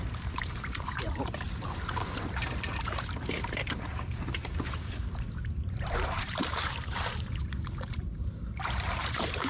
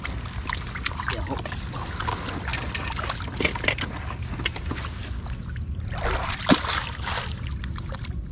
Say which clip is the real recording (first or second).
second